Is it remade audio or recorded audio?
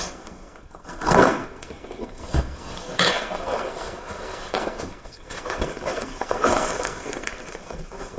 remade